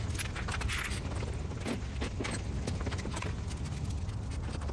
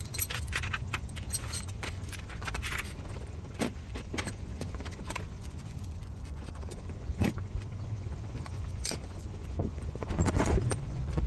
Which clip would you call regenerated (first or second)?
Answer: second